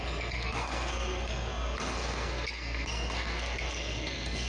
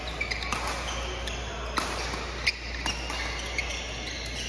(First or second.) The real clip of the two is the second